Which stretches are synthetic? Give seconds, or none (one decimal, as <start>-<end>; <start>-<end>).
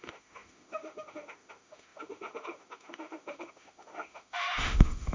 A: 0.0-5.1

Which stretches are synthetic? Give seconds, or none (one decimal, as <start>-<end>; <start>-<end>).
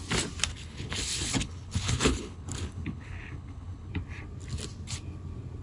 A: 0.5-3.9